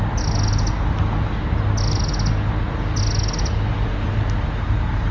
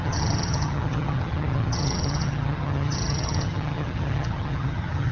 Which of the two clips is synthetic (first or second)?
second